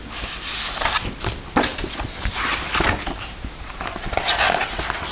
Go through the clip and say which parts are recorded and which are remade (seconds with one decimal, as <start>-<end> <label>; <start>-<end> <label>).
0.0-5.1 recorded